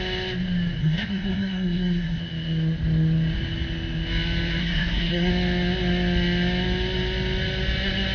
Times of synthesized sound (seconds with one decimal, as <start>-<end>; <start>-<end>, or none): 0.8-2.2; 4.6-5.3